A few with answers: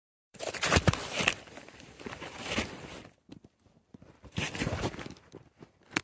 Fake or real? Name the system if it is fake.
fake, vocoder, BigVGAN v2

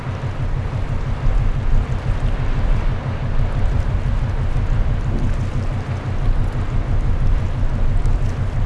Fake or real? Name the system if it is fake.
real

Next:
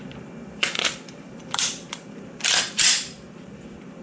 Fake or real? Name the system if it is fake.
fake, vocoder, BigVGAN v2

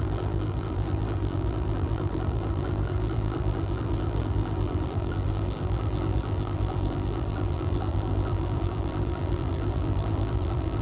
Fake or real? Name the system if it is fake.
fake, vocoder, BigVGAN v2